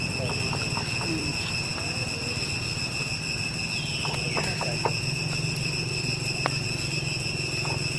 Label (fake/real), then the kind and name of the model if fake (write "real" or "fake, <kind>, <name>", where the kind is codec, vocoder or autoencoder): real